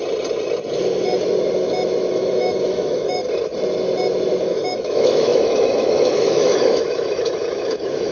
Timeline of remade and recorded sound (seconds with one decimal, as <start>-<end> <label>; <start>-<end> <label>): 0.0-2.1 recorded; 2.1-3.2 remade; 3.2-4.4 recorded; 4.4-8.1 remade